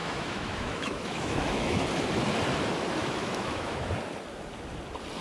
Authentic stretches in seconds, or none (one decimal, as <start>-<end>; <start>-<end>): 1.8-3.0; 3.9-5.2